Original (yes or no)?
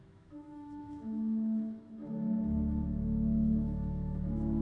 no